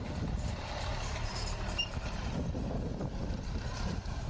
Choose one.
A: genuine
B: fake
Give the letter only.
B